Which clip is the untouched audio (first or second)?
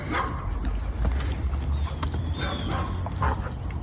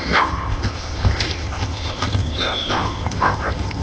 first